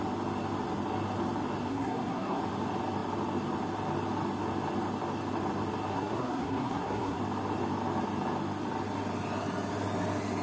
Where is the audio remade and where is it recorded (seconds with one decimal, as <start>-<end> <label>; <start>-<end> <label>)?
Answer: 0.0-1.7 recorded; 1.7-2.4 remade; 2.4-5.9 recorded; 5.9-7.2 remade; 7.2-10.4 recorded